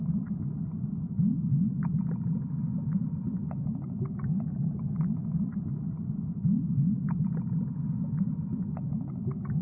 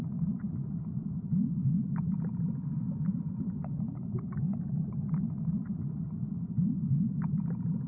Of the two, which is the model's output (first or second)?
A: second